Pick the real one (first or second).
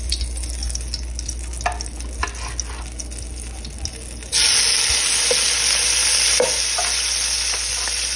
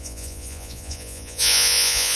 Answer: first